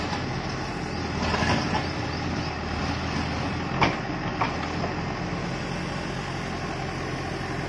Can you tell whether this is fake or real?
real